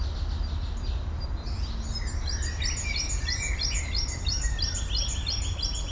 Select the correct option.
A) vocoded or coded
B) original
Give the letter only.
B